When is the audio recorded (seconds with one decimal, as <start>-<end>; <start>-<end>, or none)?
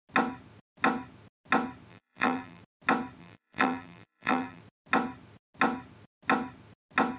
0.0-1.9; 2.6-3.2; 4.6-7.2